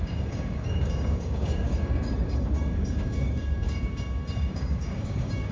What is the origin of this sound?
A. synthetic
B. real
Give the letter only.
A